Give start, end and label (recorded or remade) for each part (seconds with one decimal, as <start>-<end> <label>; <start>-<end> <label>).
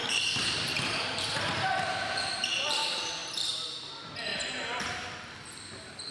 0.0-4.3 remade; 4.3-6.1 recorded